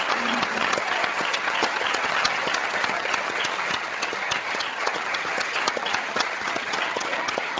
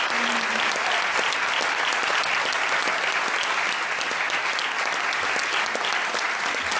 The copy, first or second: first